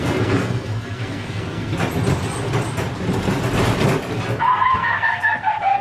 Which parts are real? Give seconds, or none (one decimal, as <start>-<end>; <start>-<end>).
1.7-4.4